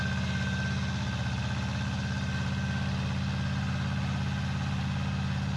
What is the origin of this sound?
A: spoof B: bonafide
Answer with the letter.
B